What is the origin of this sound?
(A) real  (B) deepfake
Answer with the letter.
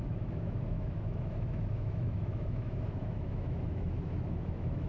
B